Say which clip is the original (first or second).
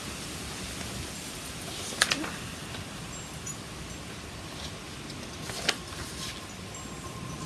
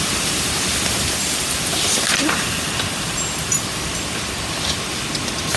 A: first